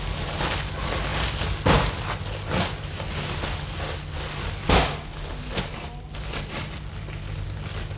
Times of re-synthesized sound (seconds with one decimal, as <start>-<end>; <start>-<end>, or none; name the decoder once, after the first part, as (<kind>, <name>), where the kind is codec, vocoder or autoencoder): none